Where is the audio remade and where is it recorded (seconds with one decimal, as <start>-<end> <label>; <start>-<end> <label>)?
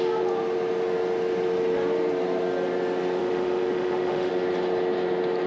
0.0-3.2 recorded; 3.2-4.3 remade; 4.3-5.5 recorded